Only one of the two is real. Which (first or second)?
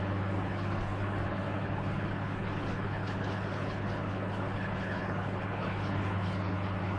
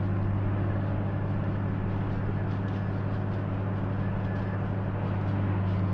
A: second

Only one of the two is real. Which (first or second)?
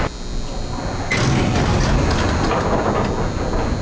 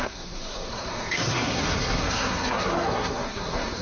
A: first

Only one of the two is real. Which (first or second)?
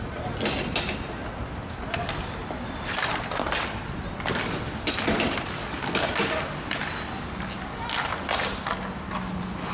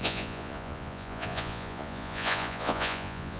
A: first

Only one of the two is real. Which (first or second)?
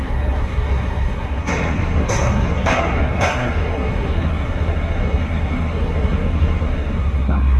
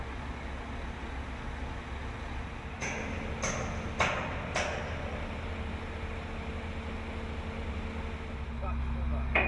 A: second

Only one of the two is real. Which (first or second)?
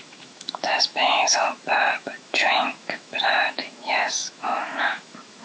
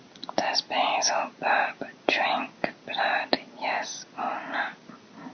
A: second